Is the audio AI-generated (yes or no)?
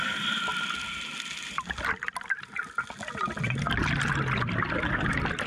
no